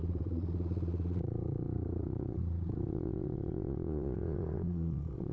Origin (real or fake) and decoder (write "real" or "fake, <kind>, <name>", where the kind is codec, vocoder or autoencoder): fake, vocoder, Vocos